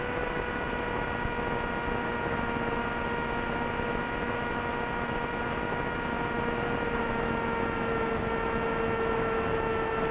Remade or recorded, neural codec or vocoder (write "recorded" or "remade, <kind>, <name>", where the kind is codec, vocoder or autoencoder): recorded